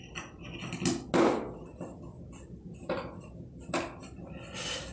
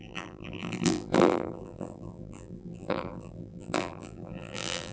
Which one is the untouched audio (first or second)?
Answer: first